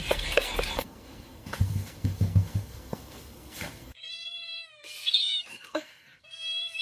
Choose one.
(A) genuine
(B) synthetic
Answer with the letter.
B